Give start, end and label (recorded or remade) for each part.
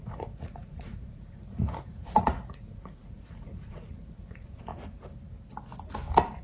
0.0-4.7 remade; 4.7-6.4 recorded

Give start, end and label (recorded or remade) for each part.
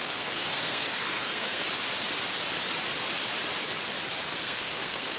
0.0-1.6 remade; 1.6-4.4 recorded; 4.4-5.2 remade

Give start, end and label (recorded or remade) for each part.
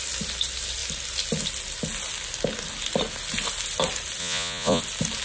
0.0-4.2 recorded; 4.2-4.8 remade; 4.8-5.2 recorded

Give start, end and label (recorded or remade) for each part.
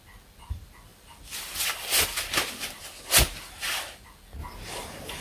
0.0-5.2 recorded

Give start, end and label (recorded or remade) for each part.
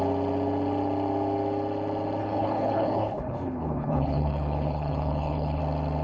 0.0-2.2 recorded; 2.2-5.6 remade; 5.6-6.0 recorded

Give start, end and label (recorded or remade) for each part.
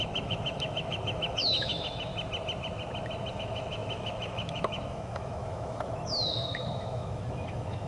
0.0-2.1 remade; 2.1-3.3 recorded; 3.3-7.9 remade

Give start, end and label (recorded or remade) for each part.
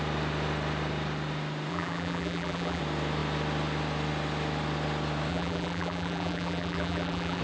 0.0-1.7 recorded; 1.7-2.8 remade; 2.8-5.3 recorded; 5.3-7.4 remade